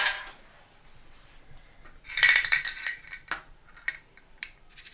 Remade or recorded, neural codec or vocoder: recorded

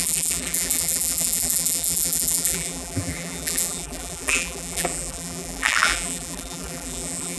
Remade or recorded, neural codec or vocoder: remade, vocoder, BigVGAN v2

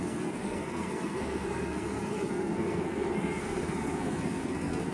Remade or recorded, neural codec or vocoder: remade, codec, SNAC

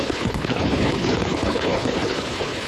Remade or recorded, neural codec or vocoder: remade, codec, HILCodec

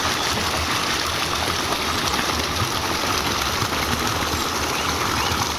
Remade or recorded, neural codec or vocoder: recorded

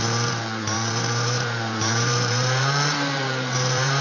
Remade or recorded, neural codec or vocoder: remade, vocoder, BigVGAN v2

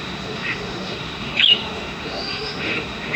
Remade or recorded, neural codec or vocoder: remade, autoencoder, DAC-VAE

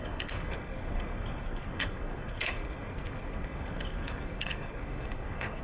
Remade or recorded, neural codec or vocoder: remade, codec, SNAC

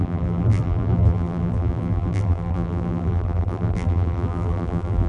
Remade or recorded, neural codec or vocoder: remade, vocoder, BigVGAN v2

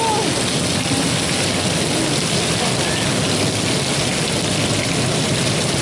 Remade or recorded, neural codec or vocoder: recorded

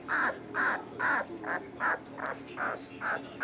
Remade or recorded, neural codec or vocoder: recorded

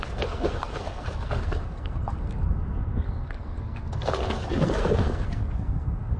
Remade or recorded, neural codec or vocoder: remade, codec, SNAC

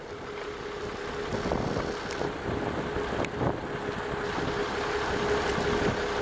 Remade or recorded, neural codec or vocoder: recorded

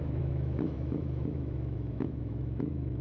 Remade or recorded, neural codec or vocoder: remade, autoencoder, DAC-VAE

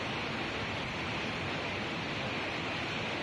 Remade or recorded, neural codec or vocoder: recorded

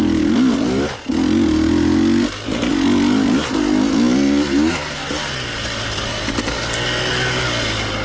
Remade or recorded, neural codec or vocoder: recorded